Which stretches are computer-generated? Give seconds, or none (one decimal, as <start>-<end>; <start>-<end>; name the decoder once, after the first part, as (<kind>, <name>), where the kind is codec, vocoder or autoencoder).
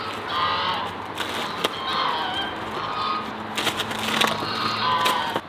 none